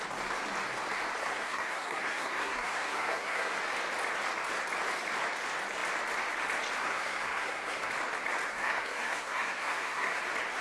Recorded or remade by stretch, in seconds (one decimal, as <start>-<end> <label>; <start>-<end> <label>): 0.0-1.2 recorded; 1.2-3.6 remade; 3.6-6.8 recorded; 6.8-7.9 remade; 7.9-8.5 recorded; 8.5-10.2 remade; 10.2-10.6 recorded